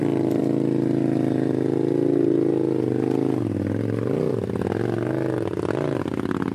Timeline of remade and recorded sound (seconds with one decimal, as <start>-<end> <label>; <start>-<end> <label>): 0.0-6.5 recorded